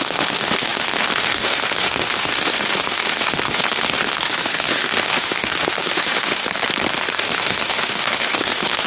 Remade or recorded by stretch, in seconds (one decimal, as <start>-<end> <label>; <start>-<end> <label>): 0.0-6.4 remade; 6.4-7.2 recorded; 7.2-8.9 remade